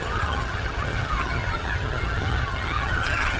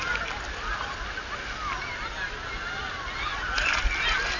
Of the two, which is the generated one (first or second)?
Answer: first